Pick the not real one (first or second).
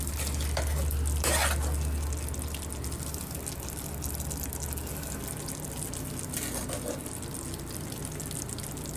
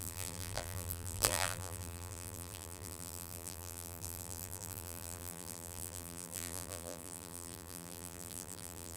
second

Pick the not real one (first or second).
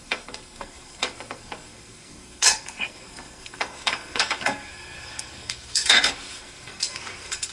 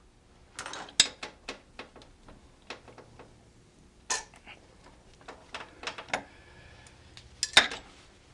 first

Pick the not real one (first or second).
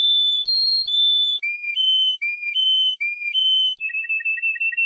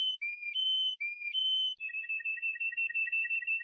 first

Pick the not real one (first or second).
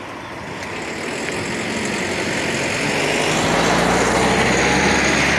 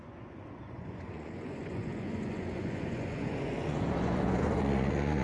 second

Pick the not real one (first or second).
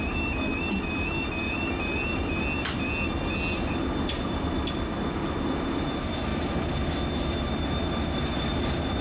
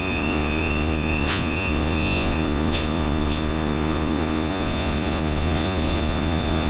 second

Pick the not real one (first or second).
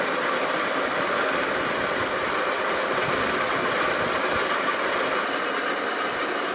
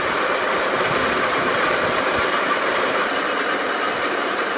second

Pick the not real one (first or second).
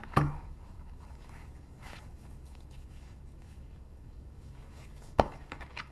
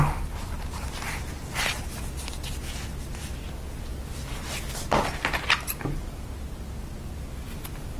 first